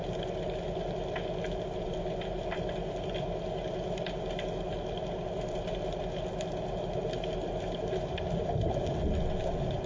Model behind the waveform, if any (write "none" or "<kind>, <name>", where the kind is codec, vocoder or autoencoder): none